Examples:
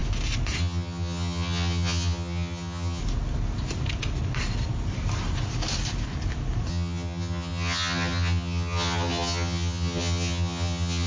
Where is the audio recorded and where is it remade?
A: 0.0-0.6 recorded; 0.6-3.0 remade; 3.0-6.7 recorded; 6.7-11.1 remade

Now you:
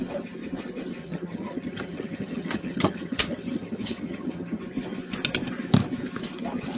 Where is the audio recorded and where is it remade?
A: 0.0-1.0 recorded; 1.0-4.6 remade; 4.6-6.8 recorded

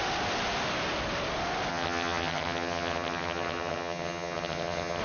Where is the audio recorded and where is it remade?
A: 0.0-1.7 recorded; 1.7-5.0 remade

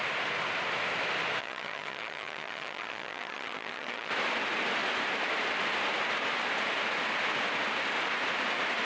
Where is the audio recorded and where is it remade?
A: 0.0-1.4 recorded; 1.4-4.1 remade; 4.1-8.8 recorded